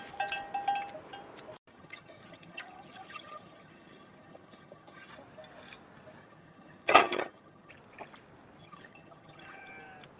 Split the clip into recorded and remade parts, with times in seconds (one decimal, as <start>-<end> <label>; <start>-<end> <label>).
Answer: 0.0-1.7 recorded; 1.7-5.1 remade; 5.1-6.2 recorded; 6.2-7.7 remade; 7.7-8.6 recorded; 8.6-9.7 remade; 9.7-10.2 recorded